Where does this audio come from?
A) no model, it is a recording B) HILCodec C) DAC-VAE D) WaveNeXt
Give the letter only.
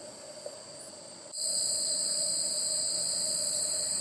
A